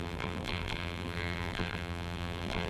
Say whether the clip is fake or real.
fake